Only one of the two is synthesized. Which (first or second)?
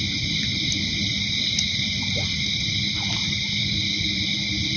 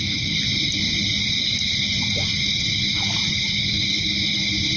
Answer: first